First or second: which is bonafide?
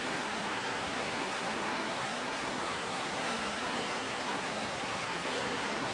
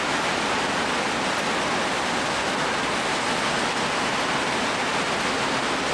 second